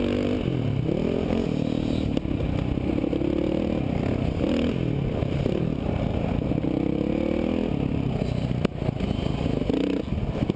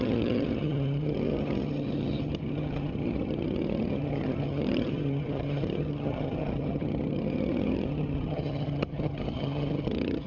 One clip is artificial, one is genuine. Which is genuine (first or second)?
first